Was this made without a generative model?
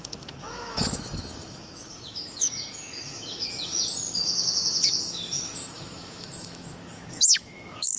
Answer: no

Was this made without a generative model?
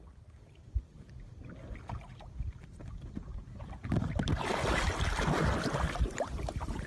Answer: yes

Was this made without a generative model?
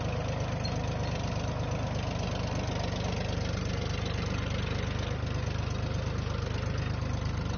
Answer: yes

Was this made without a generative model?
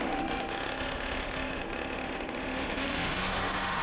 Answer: no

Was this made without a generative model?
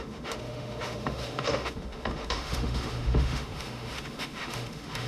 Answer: no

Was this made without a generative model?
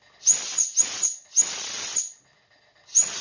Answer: yes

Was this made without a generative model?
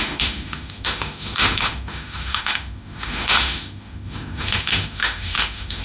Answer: no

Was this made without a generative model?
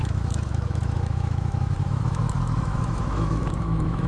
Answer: no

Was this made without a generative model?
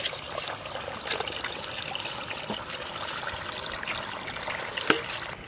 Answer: yes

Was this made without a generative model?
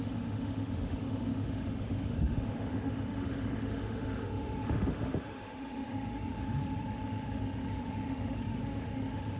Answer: no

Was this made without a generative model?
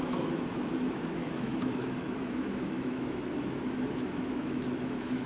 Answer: no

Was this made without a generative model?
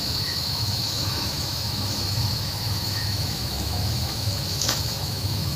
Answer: no